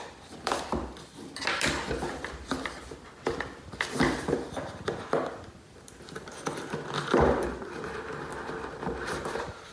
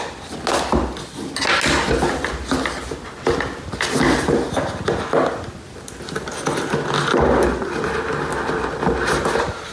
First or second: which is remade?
first